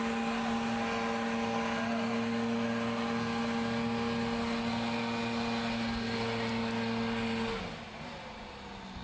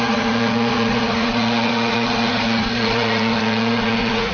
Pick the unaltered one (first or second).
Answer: first